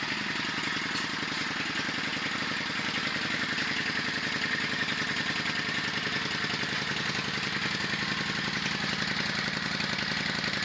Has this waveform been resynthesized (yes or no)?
no